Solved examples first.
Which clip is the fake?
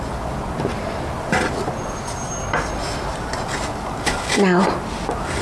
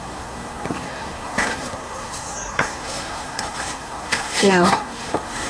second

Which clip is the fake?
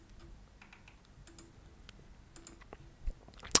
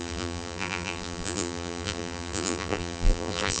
second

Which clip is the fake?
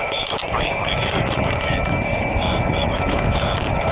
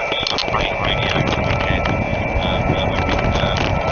first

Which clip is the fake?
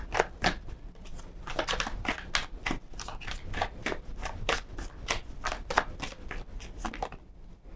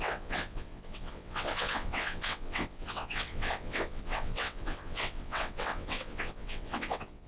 second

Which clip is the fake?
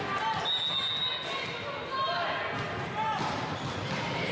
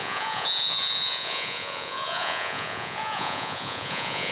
second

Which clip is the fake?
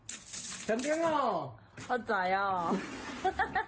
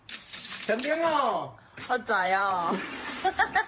second